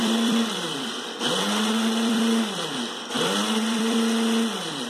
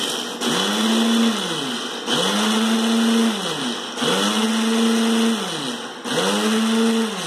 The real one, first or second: second